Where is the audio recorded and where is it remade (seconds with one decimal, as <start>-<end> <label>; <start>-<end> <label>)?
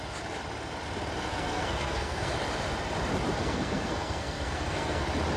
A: 0.0-1.3 recorded; 1.3-2.3 remade; 2.3-3.4 recorded; 3.4-5.0 remade; 5.0-5.4 recorded